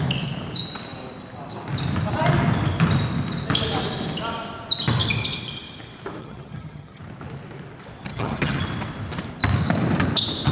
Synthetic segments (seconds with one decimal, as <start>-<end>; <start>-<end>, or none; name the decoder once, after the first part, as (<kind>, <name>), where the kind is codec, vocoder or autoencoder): 6.2-7.0 (vocoder, HiFi-GAN); 8.1-8.6